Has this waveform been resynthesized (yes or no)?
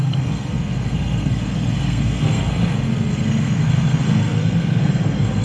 yes